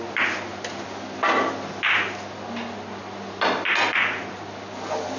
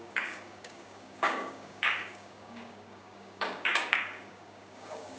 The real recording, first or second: first